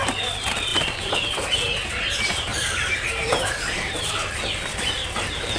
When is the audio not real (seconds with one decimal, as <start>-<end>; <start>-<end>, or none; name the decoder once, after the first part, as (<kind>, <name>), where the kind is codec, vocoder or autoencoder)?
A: 0.7-2.0 (vocoder, BigVGAN v2); 2.5-5.6